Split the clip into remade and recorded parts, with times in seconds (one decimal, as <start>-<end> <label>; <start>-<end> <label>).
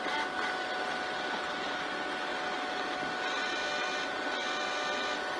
0.0-5.4 recorded